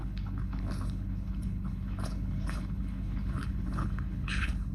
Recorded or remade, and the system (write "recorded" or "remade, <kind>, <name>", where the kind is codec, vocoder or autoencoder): remade, codec, HILCodec